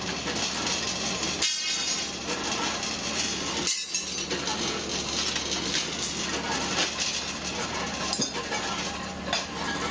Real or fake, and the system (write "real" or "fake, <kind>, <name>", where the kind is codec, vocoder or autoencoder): real